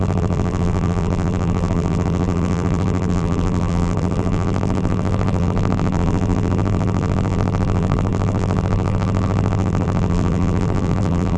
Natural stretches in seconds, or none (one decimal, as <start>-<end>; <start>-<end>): none